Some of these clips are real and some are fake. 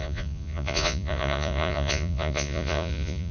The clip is fake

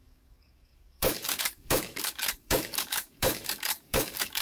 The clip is fake